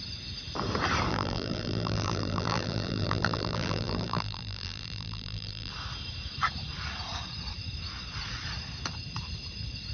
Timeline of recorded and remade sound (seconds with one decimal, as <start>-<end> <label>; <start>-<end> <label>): 0.0-1.1 recorded; 1.1-5.7 remade; 5.7-9.9 recorded